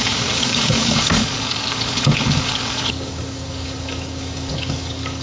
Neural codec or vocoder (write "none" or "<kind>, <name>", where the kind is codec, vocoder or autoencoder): codec, DAC